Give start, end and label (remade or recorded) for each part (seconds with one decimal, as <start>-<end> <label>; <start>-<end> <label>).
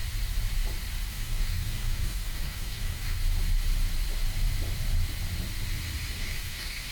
0.0-1.1 recorded; 1.1-3.2 remade; 3.2-6.1 recorded; 6.1-6.9 remade